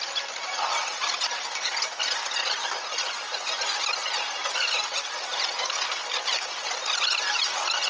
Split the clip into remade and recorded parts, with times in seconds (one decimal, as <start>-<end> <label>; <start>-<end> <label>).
0.0-7.9 recorded